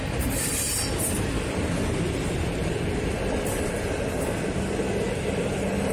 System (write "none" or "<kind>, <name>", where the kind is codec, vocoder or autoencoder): none